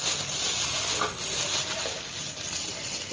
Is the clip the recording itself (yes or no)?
yes